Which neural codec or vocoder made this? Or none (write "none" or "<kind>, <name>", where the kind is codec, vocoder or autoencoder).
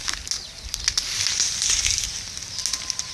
none